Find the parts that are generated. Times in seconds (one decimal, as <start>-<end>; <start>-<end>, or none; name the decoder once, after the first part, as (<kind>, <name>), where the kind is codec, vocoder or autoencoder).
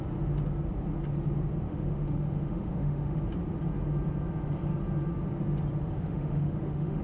1.7-3.2 (autoencoder, DAC-VAE); 5.8-7.0